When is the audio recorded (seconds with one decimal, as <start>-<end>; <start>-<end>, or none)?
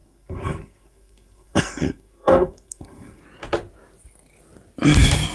3.2-5.3